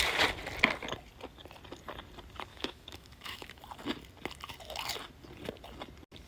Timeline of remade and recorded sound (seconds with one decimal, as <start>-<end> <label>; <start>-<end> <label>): 0.0-2.5 recorded; 2.5-3.6 remade; 3.6-6.3 recorded